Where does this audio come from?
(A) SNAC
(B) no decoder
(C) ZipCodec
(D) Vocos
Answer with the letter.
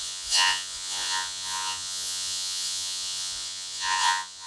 D